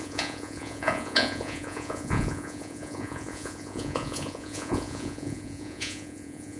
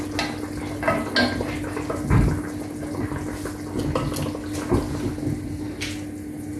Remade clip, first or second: first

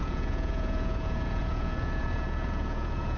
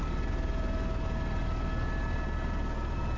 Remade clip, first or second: first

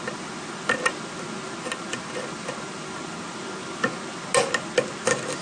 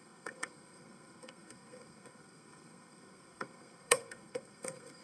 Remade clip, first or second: second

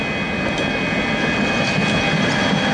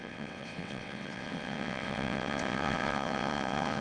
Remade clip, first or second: second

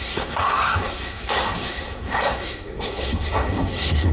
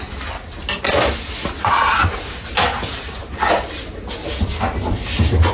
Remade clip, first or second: first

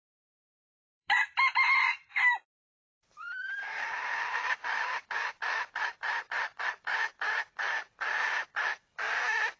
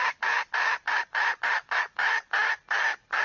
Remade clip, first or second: first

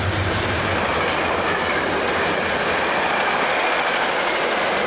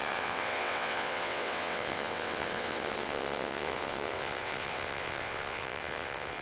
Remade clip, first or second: second